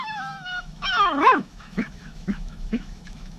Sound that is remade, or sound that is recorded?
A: remade